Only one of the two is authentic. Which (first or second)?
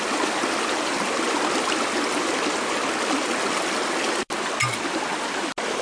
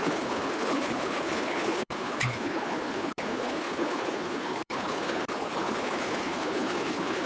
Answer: first